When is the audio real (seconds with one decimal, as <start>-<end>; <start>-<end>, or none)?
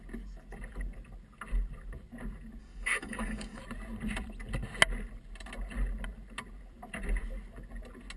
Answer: 0.0-2.6; 3.6-8.2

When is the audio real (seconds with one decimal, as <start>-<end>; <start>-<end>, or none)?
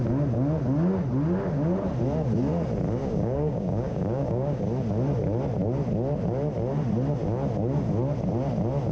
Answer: 0.0-3.0; 4.6-8.9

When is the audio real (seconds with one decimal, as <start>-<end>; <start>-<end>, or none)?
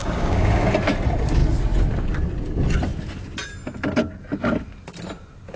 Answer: 0.7-5.6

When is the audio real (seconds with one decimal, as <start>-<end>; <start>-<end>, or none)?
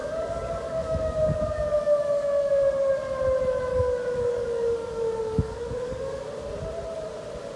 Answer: 2.6-3.7; 6.2-7.6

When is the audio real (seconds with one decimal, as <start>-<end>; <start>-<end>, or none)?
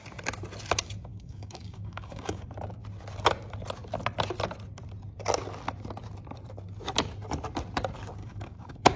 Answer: 0.0-1.1; 2.5-8.2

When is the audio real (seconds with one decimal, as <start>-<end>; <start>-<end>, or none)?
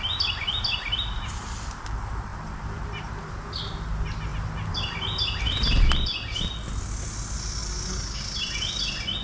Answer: 0.0-7.6; 8.2-9.2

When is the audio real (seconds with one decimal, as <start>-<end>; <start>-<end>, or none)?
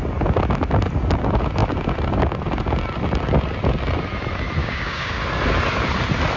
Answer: 0.0-4.6; 5.2-6.4